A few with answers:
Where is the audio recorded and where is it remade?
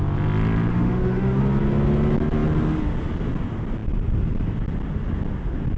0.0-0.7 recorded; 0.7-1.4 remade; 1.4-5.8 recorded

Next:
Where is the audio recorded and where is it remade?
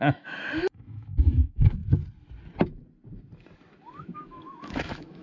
0.0-1.8 remade; 1.8-4.0 recorded; 4.0-5.2 remade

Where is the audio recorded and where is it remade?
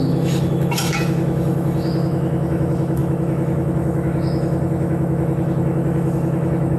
0.0-6.8 remade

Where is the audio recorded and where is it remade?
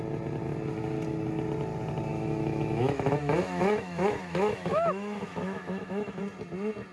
0.0-2.1 recorded; 2.1-6.2 remade; 6.2-6.9 recorded